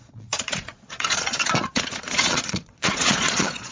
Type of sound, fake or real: fake